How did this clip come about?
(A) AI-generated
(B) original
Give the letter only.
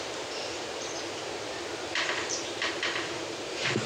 A